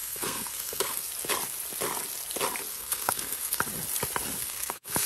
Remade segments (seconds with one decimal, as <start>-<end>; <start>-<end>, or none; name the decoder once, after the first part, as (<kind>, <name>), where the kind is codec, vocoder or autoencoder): 0.0-1.1 (codec, SNAC); 2.7-3.6; 4.4-5.1